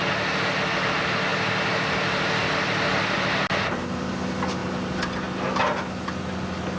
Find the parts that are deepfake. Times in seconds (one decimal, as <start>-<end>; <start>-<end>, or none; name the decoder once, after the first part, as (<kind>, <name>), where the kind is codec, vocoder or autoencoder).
none